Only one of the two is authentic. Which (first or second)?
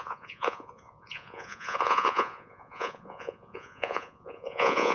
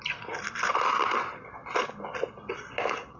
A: second